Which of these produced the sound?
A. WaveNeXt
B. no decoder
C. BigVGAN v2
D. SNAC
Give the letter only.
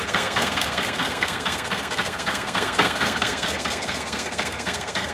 D